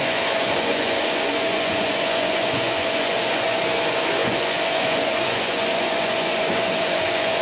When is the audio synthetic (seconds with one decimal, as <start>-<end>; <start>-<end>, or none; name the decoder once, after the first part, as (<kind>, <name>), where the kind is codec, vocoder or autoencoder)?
0.0-7.4 (vocoder, Vocos)